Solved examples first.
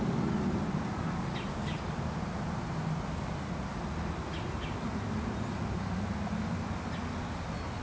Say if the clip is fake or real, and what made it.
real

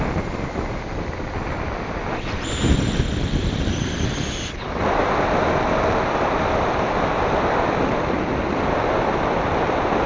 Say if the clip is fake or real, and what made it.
real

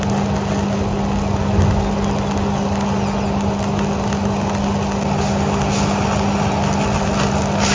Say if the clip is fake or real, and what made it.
real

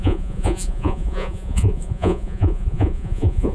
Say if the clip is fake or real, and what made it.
fake, vocoder, Vocos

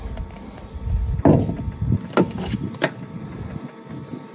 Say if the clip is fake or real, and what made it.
real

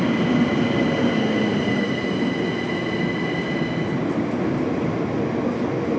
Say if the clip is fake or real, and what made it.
real